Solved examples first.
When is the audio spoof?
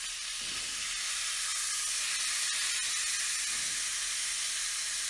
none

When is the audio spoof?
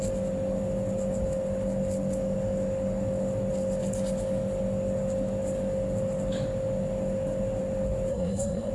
8.1-8.7 (codec, SNAC)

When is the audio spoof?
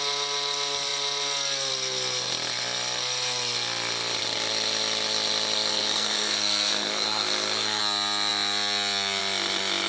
5.7-7.8 (codec, SNAC)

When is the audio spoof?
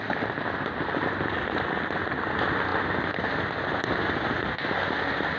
none